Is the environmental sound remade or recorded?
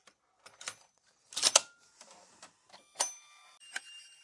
recorded